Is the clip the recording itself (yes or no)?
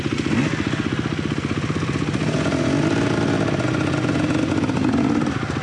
yes